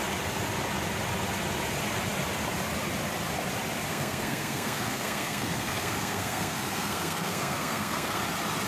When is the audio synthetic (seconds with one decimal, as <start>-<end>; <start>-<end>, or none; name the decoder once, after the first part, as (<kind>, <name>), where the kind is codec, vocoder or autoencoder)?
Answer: 3.9-8.2 (codec, SNAC)